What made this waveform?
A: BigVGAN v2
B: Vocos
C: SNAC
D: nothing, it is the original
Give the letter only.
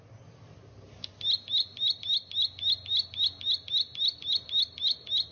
D